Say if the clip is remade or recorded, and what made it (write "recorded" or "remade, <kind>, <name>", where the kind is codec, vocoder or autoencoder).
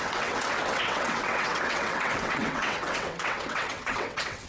remade, vocoder, WaveNeXt